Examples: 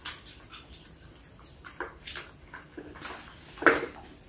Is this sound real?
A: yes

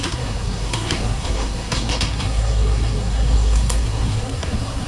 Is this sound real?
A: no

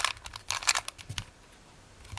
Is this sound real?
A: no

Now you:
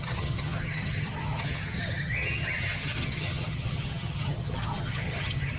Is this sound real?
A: no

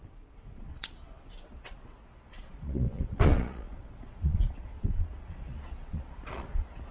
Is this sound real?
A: no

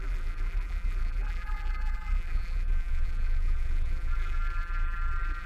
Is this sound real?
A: no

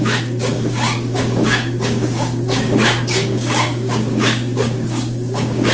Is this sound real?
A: no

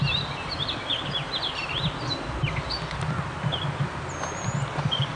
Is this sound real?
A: yes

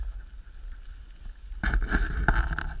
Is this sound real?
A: yes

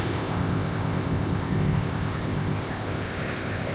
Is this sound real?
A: no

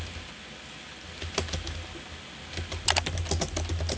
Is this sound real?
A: yes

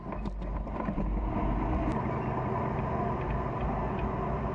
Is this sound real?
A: yes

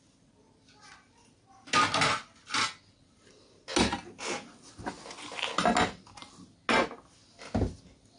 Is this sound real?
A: yes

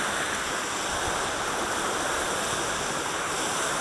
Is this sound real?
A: yes